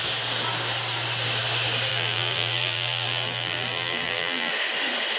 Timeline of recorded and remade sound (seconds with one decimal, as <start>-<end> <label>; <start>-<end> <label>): 0.0-1.9 recorded; 1.9-4.5 remade; 4.5-5.2 recorded